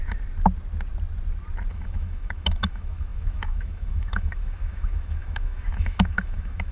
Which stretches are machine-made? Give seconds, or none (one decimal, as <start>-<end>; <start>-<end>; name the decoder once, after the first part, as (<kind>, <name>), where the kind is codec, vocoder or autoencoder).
1.7-6.7 (autoencoder, DAC-VAE)